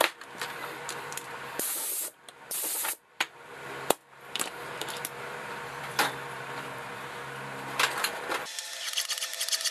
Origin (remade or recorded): remade